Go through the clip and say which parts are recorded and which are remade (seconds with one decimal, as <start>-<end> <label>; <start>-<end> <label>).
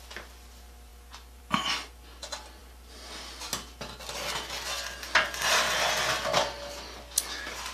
0.0-7.7 recorded